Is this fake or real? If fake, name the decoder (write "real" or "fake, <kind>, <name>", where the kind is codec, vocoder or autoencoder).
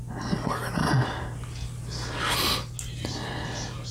real